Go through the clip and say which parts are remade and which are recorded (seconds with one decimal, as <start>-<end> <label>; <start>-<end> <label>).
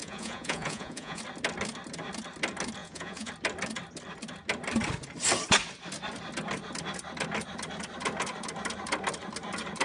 0.0-1.2 remade; 1.2-2.8 recorded; 2.8-3.3 remade; 3.3-9.8 recorded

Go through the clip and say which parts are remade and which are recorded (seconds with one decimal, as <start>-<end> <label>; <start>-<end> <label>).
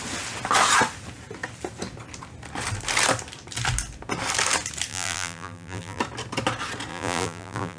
0.0-4.9 recorded; 4.9-6.0 remade; 6.0-6.9 recorded; 6.9-7.8 remade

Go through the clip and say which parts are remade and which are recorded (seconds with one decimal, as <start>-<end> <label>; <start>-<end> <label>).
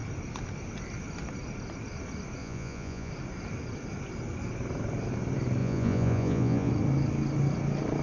0.0-2.4 recorded; 2.4-3.1 remade; 3.1-5.6 recorded; 5.6-6.7 remade; 6.7-8.0 recorded